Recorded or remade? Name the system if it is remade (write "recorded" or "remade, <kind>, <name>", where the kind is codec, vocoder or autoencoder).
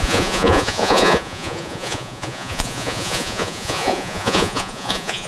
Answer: remade, vocoder, Vocos